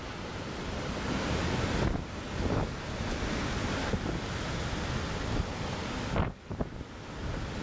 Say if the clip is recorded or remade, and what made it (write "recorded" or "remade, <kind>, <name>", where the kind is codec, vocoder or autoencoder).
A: recorded